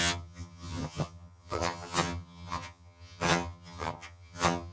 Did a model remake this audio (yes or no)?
yes